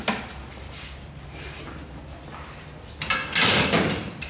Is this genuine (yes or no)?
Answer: yes